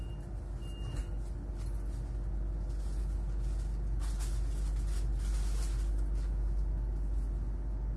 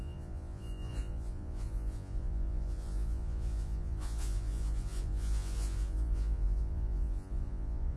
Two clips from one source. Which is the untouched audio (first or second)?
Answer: first